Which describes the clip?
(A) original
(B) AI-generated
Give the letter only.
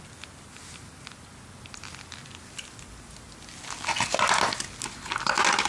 A